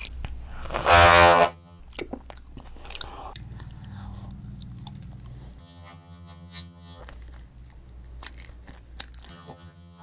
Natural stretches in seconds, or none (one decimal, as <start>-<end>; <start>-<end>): 0.0-0.9; 1.8-5.6; 7.0-9.3